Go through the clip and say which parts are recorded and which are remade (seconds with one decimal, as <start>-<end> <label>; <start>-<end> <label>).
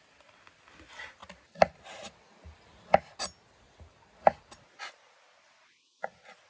0.0-6.5 recorded